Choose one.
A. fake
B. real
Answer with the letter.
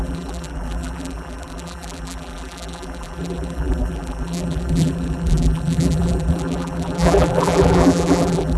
A